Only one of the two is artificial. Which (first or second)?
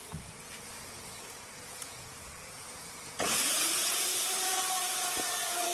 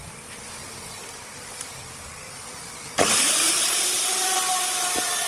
first